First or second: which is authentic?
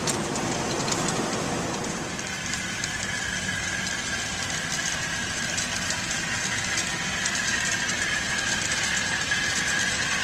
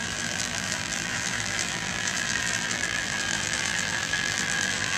first